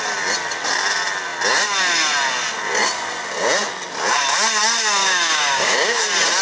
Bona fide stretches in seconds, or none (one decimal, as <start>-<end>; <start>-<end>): 0.0-5.0; 6.0-6.4